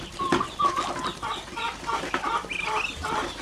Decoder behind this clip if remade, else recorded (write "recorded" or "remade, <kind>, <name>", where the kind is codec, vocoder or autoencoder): remade, vocoder, BigVGAN v2